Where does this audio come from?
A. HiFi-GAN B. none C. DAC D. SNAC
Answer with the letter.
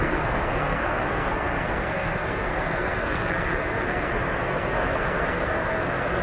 D